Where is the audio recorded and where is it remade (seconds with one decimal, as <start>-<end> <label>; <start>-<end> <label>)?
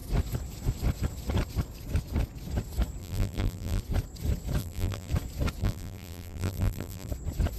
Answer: 0.0-3.0 recorded; 3.0-3.8 remade; 3.8-4.6 recorded; 4.6-5.1 remade; 5.1-5.6 recorded; 5.6-7.1 remade; 7.1-7.6 recorded